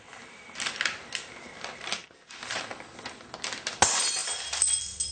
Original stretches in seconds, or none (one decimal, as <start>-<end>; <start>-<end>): 0.0-5.1